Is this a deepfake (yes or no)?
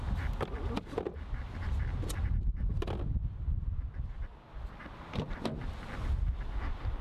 no